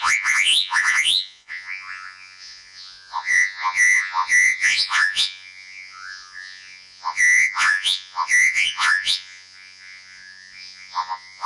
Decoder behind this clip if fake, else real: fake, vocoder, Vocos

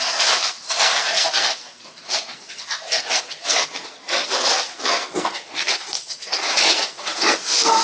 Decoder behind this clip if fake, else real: fake, codec, SNAC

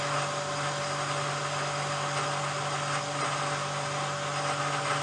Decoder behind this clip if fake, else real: real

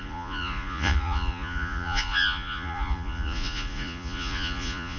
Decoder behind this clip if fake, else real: fake, vocoder, Vocos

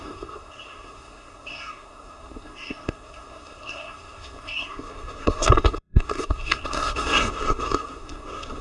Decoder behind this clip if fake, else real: fake, codec, SNAC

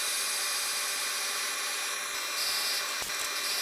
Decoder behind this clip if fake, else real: real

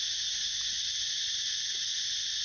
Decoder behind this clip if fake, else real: real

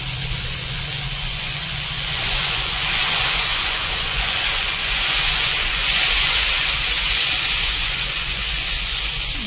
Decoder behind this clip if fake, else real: fake, vocoder, Vocos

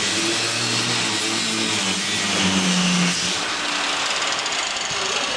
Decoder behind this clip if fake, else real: real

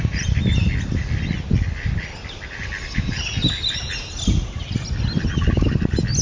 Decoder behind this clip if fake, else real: real